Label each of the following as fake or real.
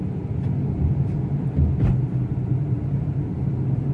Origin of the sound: real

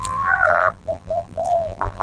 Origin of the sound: fake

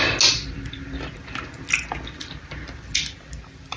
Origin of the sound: real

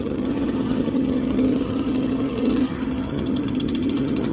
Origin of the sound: fake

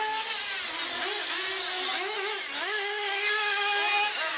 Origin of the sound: real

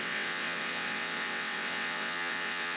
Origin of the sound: fake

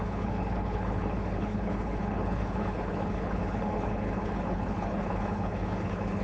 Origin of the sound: fake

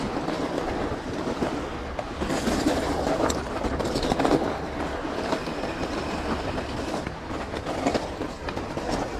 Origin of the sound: real